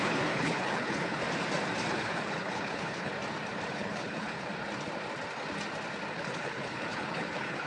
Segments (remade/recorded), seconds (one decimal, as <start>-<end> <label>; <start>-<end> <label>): 0.0-1.2 remade; 1.2-1.9 recorded; 1.9-3.1 remade; 3.1-3.7 recorded; 3.7-4.5 remade; 4.5-6.1 recorded; 6.1-7.7 remade